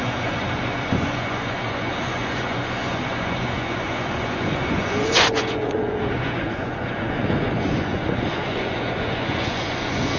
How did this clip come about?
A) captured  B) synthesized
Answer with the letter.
B